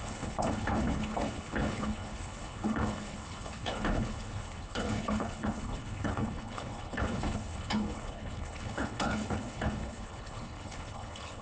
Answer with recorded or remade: remade